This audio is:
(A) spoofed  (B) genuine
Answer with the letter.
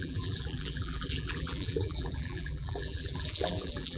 A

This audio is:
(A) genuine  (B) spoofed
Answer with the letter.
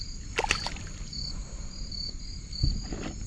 A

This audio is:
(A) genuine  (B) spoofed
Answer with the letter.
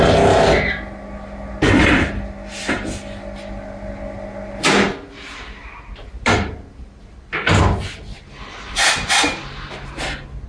A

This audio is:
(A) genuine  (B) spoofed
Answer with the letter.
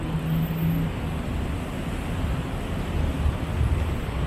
A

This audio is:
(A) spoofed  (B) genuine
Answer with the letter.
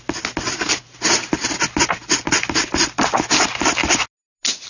B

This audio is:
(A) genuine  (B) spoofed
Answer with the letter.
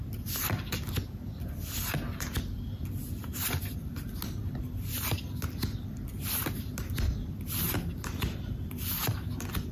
A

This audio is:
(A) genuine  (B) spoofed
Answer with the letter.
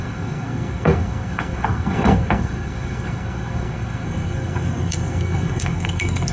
B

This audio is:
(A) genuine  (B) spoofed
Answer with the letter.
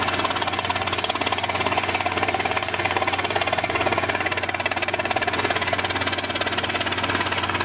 B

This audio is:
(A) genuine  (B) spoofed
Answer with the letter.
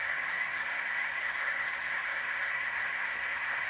B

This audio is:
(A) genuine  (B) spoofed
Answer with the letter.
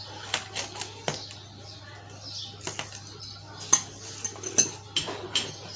A